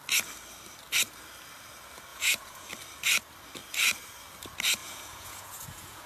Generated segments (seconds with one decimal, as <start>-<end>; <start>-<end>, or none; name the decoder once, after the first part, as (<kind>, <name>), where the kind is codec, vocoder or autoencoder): 2.1-2.7 (vocoder, Vocos); 4.8-6.1